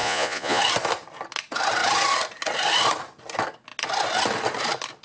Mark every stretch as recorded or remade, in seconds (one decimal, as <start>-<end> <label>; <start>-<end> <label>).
0.0-0.6 remade; 0.6-5.0 recorded